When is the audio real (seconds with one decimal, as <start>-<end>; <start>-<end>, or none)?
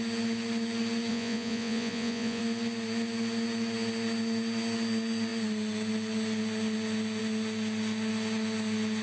0.0-1.1; 2.4-9.0